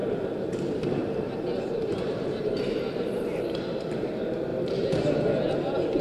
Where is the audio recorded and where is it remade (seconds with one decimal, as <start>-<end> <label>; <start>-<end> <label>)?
0.0-3.6 remade; 3.6-4.5 recorded; 4.5-5.0 remade; 5.0-6.0 recorded